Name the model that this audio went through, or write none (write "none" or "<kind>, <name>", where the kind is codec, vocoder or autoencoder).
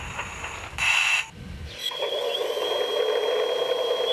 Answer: none